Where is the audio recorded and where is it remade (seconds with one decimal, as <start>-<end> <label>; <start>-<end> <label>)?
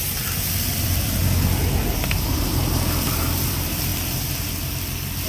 0.0-1.2 remade; 1.2-2.5 recorded; 2.5-3.9 remade; 3.9-5.3 recorded